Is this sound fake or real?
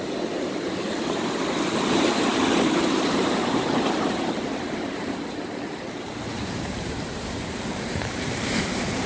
fake